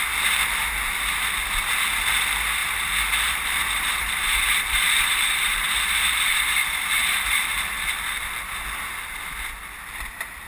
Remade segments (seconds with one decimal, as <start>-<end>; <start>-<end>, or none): 2.6-6.4; 7.0-8.6